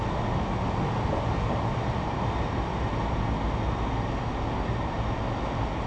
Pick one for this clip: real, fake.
real